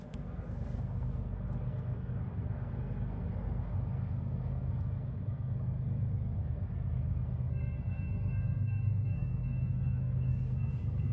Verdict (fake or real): fake